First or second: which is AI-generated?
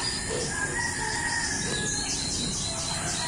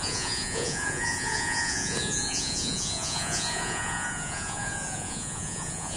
second